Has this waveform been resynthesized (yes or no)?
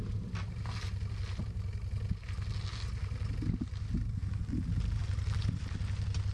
no